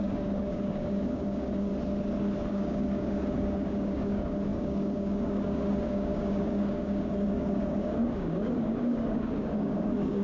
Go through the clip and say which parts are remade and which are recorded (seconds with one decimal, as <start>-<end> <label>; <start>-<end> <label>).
0.0-1.7 remade; 1.7-2.5 recorded; 2.5-10.2 remade